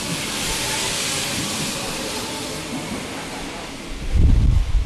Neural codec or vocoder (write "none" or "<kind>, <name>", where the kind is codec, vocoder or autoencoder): vocoder, BigVGAN v2